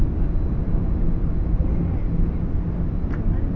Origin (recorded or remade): recorded